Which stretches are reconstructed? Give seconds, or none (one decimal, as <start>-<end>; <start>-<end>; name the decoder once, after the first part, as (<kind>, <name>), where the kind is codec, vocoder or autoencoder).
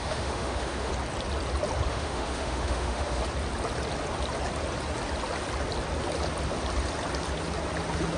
0.0-0.9 (autoencoder, DAC-VAE); 1.9-3.2